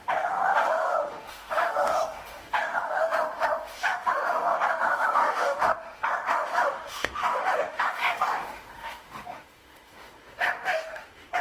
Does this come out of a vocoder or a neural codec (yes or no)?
yes